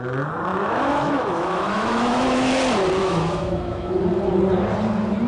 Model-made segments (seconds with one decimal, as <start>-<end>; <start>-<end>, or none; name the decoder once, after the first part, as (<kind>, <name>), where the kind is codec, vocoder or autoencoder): 0.5-2.5 (autoencoder, DAC-VAE); 3.0-4.0